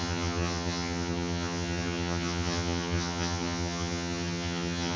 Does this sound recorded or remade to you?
remade